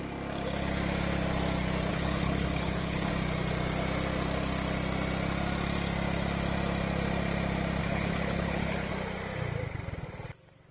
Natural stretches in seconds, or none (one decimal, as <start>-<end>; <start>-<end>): 0.0-1.9; 3.1-7.8; 8.9-10.7